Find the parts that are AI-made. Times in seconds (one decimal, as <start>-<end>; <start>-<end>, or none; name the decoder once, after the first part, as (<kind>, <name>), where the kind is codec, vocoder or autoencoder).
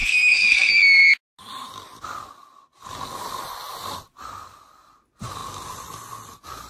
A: 0.0-0.7 (codec, SNAC)